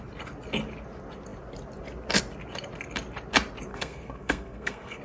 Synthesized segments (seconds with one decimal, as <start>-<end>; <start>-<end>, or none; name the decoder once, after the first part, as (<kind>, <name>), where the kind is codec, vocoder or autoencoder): 3.7-5.0 (codec, SNAC)